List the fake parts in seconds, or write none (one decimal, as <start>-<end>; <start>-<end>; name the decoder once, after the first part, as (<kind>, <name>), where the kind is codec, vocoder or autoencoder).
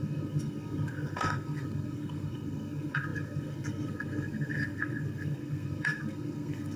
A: 0.0-6.8 (codec, SNAC)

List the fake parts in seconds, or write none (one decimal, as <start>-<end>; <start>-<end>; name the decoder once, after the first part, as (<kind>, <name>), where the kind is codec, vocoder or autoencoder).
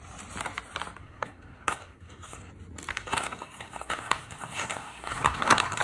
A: 1.0-2.5 (codec, SNAC); 2.9-5.8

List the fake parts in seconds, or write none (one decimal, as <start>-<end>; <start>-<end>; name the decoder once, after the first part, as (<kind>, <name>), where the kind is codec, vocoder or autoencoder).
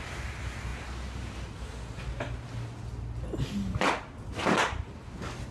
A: none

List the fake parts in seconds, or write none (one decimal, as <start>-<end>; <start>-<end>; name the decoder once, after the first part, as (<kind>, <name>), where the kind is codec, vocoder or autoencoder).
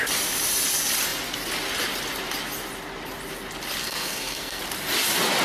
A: 3.8-4.6 (codec, SNAC)